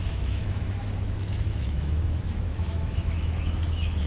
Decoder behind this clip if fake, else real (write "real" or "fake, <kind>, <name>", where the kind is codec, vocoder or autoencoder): fake, autoencoder, DAC-VAE